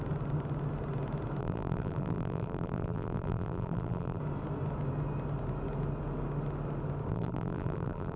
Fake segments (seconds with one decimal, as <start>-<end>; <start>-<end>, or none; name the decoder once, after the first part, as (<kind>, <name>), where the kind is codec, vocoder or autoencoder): 1.4-4.2 (vocoder, BigVGAN v2); 7.1-8.2